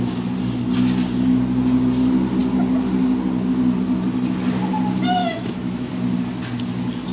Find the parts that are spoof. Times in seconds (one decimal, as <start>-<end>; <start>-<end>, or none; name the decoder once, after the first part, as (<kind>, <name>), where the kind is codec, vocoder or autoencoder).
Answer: 5.2-5.9 (autoencoder, DAC-VAE)